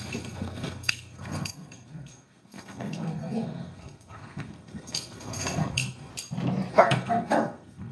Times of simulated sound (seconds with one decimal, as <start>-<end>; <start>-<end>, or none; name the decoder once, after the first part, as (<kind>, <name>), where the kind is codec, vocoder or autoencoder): 0.0-6.1 (codec, SNAC); 6.7-7.9